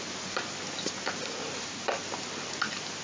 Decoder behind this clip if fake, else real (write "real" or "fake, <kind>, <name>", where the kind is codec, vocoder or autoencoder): real